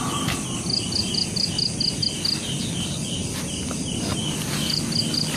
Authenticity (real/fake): real